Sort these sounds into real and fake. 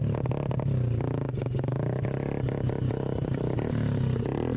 real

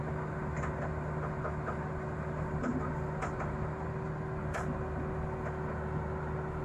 real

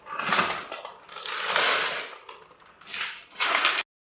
real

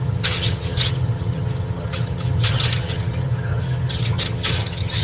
fake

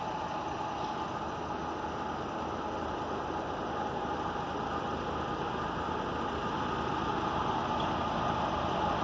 real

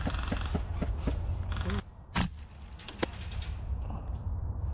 real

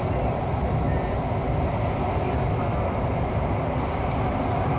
real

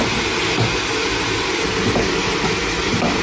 real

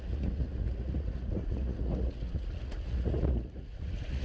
fake